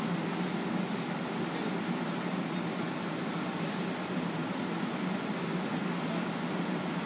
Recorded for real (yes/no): yes